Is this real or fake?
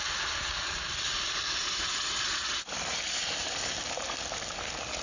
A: real